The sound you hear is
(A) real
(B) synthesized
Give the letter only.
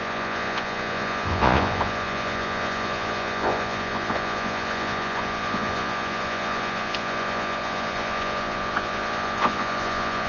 B